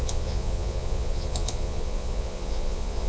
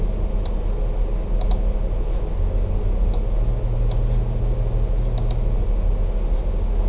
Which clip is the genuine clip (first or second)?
second